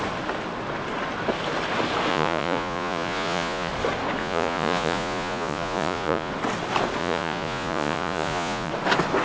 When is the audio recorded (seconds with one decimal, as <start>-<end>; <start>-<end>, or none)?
0.0-2.1; 3.7-4.2; 6.3-7.0; 8.7-9.2